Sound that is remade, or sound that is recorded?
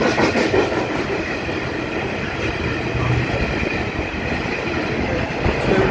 recorded